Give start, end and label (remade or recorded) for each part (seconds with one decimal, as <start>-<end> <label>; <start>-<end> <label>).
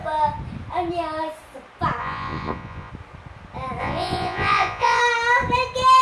0.0-2.0 recorded; 2.0-2.9 remade; 2.9-3.8 recorded; 3.8-5.0 remade; 5.0-6.0 recorded